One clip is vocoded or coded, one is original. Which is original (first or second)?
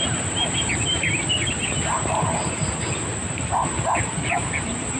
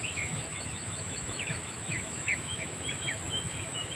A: first